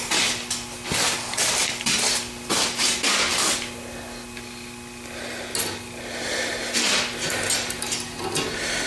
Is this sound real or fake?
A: real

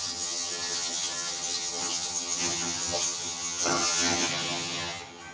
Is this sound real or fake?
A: fake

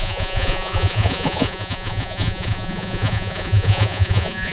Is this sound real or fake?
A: fake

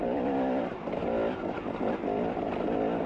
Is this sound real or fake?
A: real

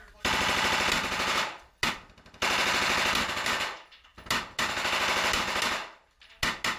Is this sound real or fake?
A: real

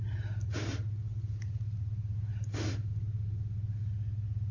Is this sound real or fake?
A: real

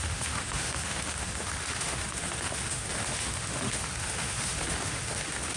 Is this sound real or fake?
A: fake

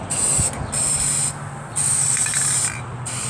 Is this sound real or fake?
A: real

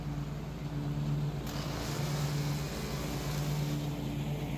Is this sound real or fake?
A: real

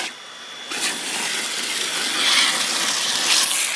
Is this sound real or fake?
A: real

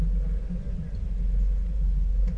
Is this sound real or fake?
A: real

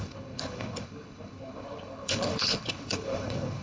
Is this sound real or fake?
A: fake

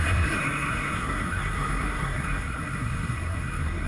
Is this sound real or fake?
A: fake